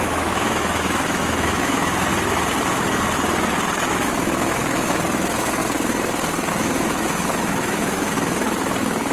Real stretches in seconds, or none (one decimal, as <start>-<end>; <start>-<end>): 2.1-3.9; 5.6-6.5